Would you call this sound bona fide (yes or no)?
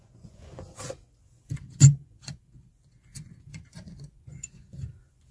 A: no